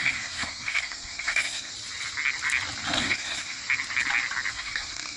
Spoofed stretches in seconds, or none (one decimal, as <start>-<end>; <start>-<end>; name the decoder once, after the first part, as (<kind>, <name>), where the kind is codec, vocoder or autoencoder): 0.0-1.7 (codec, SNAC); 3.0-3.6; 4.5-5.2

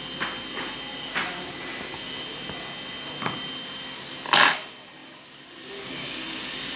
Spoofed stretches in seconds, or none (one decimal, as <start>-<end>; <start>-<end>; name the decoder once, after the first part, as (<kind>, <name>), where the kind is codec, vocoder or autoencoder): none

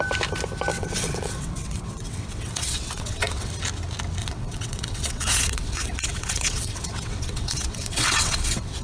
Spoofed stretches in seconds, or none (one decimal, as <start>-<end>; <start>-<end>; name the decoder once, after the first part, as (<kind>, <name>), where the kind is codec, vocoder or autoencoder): 0.7-3.5 (vocoder, WaveNeXt); 4.2-8.8

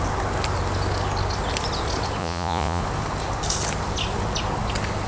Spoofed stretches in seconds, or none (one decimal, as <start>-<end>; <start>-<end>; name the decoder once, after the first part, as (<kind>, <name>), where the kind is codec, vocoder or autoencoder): 2.2-2.8 (vocoder, Vocos)

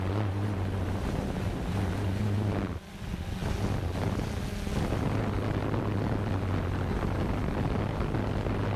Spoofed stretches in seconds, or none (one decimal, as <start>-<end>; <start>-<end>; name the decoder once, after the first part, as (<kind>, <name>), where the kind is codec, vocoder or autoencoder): none

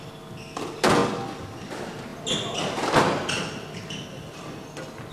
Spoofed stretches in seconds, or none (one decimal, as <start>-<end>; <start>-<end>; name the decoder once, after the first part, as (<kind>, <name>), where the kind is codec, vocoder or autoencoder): none

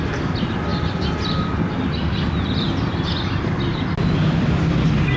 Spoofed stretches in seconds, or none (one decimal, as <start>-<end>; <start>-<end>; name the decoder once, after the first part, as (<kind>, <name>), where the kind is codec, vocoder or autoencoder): 0.7-1.6 (vocoder, BigVGAN v2)